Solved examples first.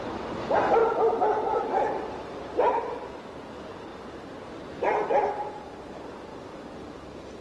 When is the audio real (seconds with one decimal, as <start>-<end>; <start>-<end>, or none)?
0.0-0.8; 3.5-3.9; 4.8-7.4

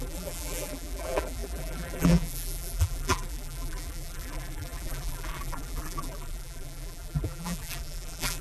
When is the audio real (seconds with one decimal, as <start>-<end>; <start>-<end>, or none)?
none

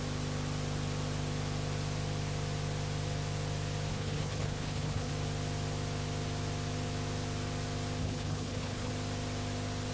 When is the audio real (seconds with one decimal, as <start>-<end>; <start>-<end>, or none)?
0.0-3.9; 5.1-8.0; 8.9-9.9

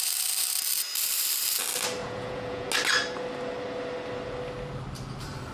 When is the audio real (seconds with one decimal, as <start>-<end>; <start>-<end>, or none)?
0.0-2.0; 2.7-5.5

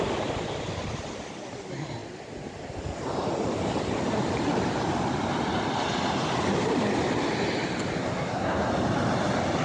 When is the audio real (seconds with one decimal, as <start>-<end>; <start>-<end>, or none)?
0.0-8.0; 8.7-9.6

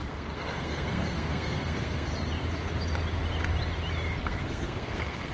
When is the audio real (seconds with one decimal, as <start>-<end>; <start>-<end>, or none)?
2.1-4.2

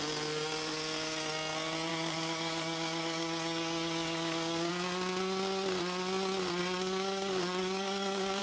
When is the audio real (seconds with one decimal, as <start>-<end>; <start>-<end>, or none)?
0.0-1.9; 4.7-6.6